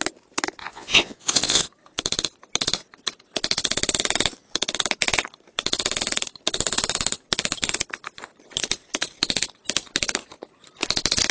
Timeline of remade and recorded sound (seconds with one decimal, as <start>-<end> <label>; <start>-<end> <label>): 0.0-0.6 recorded; 0.6-1.6 remade; 1.6-11.3 recorded

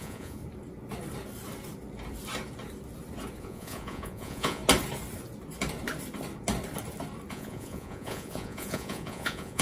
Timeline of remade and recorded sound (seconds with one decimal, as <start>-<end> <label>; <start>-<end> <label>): 0.0-0.4 remade; 0.4-3.4 recorded; 3.4-4.6 remade; 4.6-7.3 recorded; 7.3-9.6 remade

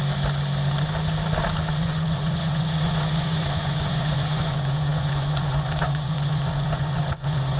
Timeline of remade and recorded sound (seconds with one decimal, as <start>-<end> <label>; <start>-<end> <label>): 0.0-1.7 recorded; 1.7-7.6 remade

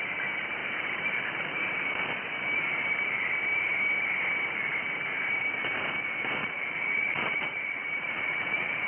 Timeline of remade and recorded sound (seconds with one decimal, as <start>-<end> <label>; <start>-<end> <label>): 0.0-6.4 recorded; 6.4-8.9 remade

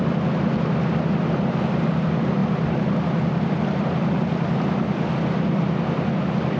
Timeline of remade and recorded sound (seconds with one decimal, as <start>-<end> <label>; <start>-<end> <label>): 0.0-6.6 recorded